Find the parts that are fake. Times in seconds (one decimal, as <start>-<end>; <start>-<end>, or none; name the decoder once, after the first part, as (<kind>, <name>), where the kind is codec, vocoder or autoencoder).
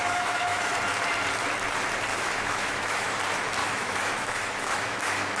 0.0-0.8 (autoencoder, DAC-VAE); 2.1-3.2; 3.6-5.4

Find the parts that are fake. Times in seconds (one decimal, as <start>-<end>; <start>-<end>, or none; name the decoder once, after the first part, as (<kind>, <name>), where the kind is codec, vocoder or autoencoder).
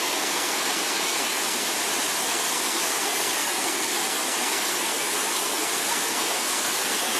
0.0-1.7 (codec, SNAC); 2.2-7.2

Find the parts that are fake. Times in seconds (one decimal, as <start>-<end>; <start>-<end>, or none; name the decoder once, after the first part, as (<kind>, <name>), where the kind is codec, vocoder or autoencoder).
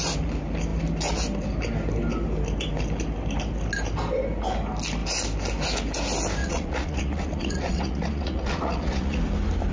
6.4-9.2 (vocoder, Vocos)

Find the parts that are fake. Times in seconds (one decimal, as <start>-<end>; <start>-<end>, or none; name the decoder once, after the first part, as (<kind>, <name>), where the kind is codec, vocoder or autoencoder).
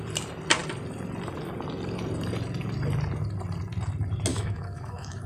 4.3-5.3 (autoencoder, DAC-VAE)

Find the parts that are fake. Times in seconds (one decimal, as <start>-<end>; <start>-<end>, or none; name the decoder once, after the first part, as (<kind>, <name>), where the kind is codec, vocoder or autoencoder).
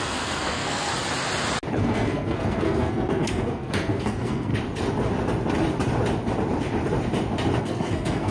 0.0-0.9 (codec, SNAC); 1.7-4.5; 7.6-8.3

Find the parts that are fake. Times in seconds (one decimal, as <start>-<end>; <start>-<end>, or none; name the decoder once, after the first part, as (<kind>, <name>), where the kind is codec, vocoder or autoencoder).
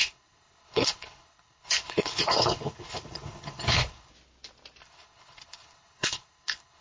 0.0-4.1 (codec, HILCodec); 4.8-6.8